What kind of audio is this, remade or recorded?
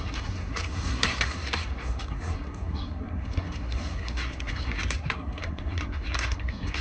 remade